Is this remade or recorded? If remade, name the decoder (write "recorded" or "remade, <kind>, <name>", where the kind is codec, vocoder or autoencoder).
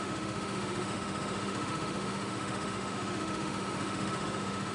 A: remade, autoencoder, DAC-VAE